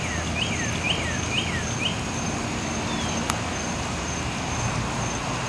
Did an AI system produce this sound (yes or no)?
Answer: no